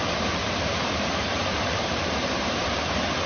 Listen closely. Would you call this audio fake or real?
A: fake